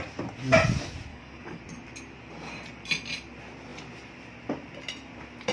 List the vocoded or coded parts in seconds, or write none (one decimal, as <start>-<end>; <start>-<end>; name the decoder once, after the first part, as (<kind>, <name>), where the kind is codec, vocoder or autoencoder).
1.1-1.6 (codec, DAC)